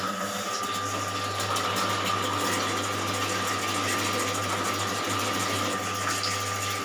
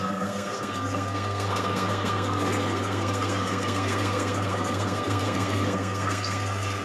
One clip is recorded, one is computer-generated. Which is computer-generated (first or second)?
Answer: second